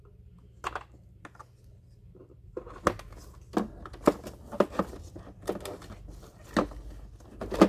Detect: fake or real real